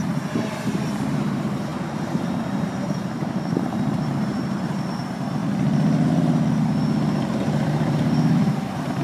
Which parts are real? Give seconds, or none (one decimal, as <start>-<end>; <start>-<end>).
5.4-7.3